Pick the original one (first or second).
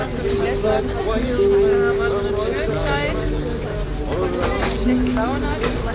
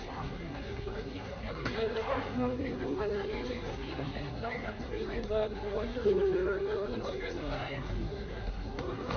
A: first